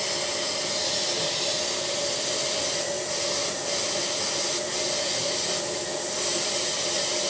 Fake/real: real